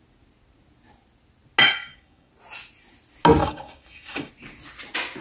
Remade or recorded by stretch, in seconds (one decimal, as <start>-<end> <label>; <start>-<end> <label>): 0.0-1.6 recorded; 1.6-2.3 remade; 2.3-3.4 recorded; 3.4-4.3 remade; 4.3-5.2 recorded